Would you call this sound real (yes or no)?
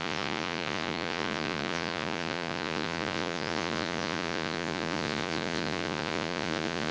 no